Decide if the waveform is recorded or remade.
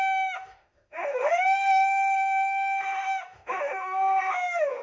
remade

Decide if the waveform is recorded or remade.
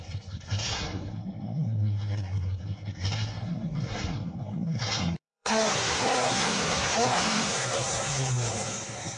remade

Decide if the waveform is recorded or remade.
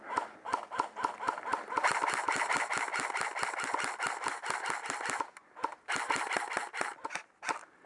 recorded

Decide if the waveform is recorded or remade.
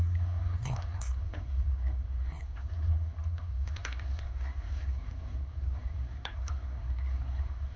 remade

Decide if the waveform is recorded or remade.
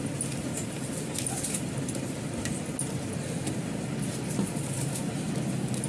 recorded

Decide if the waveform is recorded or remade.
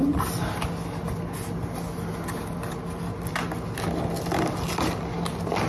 recorded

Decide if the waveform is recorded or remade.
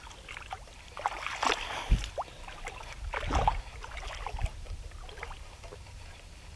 recorded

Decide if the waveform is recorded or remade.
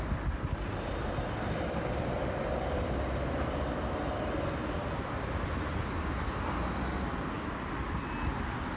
recorded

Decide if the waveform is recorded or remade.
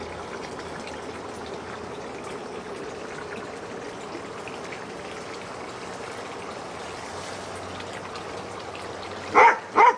recorded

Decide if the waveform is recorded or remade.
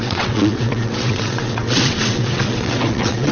remade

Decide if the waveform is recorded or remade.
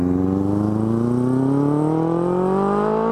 recorded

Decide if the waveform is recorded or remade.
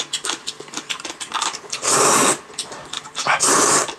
remade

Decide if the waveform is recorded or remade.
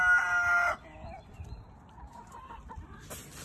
recorded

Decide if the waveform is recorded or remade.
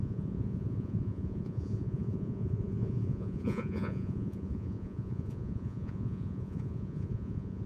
remade